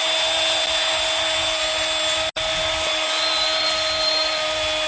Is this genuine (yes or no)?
yes